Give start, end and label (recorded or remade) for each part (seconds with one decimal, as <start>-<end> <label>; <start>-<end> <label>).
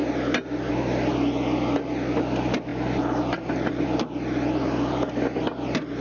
0.0-6.0 recorded